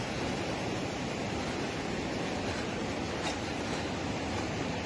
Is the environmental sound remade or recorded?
recorded